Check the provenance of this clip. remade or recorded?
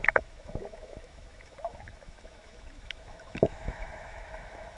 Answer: remade